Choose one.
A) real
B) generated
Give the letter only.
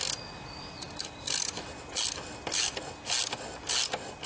A